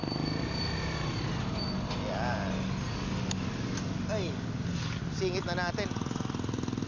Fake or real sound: real